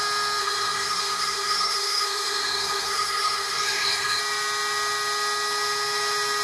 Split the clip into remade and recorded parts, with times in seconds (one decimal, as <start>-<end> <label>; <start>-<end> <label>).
0.0-0.4 recorded; 0.4-4.2 remade; 4.2-6.4 recorded